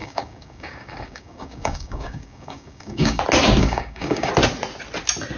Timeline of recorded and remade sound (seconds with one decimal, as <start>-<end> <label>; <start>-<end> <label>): 0.0-3.2 remade; 3.2-3.6 recorded; 3.6-4.3 remade; 4.3-5.4 recorded